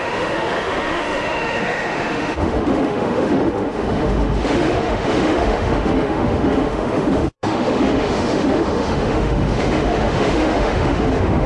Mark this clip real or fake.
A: fake